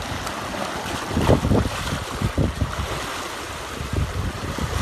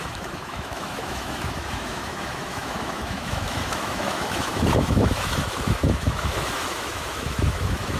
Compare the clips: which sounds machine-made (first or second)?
second